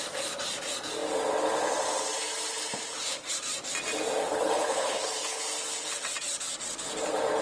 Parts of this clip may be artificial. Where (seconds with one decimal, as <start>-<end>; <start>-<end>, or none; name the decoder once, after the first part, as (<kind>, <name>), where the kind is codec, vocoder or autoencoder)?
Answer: 4.2-5.4 (codec, HILCodec)